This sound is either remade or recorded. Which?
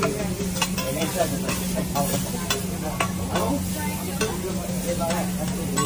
recorded